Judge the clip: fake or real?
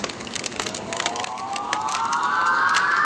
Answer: fake